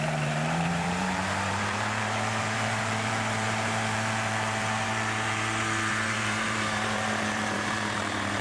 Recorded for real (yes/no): no